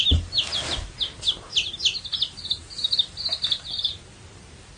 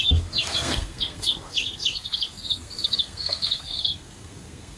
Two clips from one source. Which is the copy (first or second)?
second